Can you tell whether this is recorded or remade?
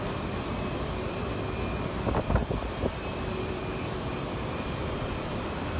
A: remade